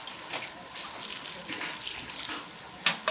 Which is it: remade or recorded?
recorded